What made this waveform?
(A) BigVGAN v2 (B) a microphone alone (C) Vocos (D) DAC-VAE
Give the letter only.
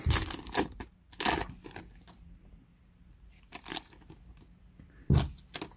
B